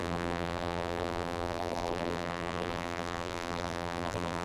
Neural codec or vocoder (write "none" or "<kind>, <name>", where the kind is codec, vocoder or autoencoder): vocoder, BigVGAN v2